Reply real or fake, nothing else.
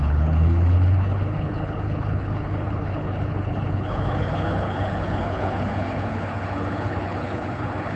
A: fake